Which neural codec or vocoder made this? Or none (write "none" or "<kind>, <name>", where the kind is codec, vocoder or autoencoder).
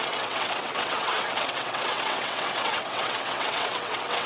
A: vocoder, WaveNeXt